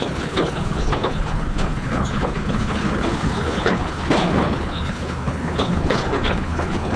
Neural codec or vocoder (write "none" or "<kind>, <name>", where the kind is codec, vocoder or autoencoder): codec, HILCodec